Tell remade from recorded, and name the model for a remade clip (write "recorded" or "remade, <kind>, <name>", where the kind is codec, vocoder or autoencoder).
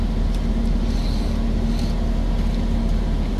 recorded